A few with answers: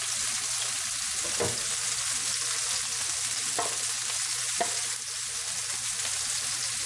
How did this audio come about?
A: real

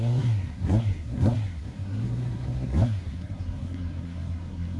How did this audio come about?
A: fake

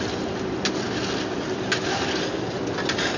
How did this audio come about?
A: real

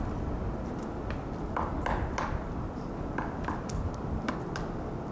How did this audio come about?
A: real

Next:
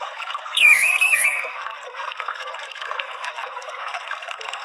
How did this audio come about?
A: fake